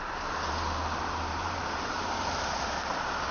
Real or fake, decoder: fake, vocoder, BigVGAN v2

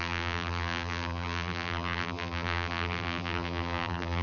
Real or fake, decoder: fake, vocoder, BigVGAN v2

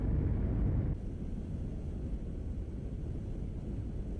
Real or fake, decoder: real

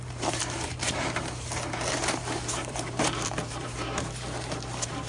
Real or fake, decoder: fake, vocoder, BigVGAN v2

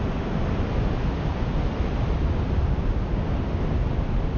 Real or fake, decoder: real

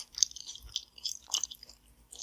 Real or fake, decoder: fake, vocoder, BigVGAN v2